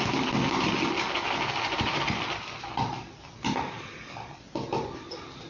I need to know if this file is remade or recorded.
recorded